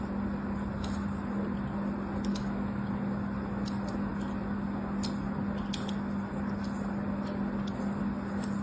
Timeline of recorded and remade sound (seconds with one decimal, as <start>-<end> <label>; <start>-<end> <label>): 0.0-2.3 recorded; 2.3-2.9 remade; 2.9-8.6 recorded